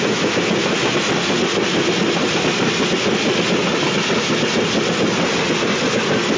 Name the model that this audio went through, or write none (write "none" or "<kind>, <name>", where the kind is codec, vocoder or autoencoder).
none